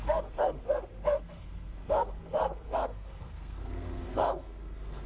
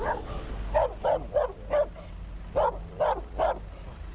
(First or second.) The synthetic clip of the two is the first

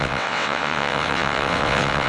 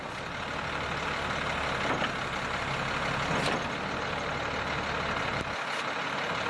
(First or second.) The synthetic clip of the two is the first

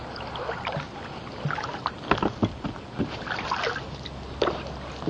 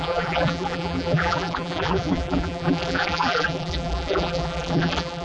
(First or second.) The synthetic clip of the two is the second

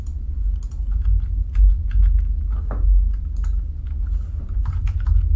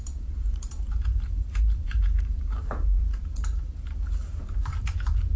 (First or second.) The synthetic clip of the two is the second